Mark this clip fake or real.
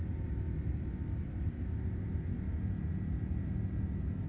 real